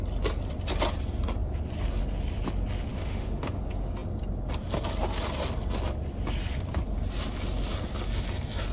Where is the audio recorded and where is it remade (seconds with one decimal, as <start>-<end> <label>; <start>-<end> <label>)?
0.0-2.9 recorded; 2.9-3.6 remade; 3.6-8.7 recorded